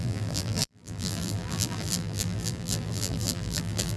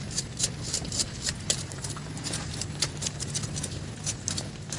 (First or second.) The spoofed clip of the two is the first